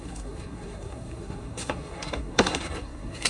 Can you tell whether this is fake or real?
fake